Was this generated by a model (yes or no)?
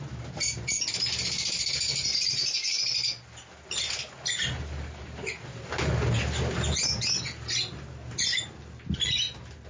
no